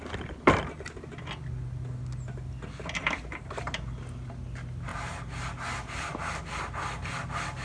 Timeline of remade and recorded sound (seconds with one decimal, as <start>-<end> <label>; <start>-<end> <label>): 0.0-7.6 recorded